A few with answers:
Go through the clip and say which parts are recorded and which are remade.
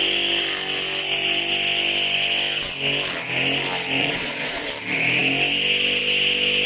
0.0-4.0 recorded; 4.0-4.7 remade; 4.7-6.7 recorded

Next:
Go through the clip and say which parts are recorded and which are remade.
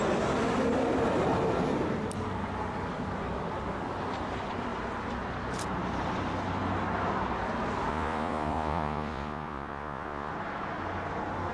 0.0-7.9 recorded; 7.9-10.3 remade; 10.3-11.5 recorded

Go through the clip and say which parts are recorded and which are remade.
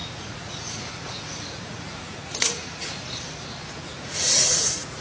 0.0-3.0 remade; 3.0-3.6 recorded; 3.6-5.0 remade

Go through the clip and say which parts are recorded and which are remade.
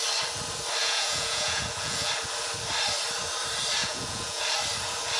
0.0-0.8 recorded; 0.8-2.1 remade; 2.1-3.8 recorded; 3.8-4.4 remade; 4.4-5.2 recorded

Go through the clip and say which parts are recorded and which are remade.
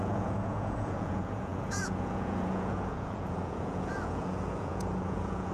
0.0-5.5 remade